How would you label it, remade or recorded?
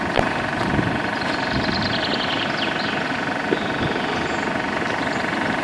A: recorded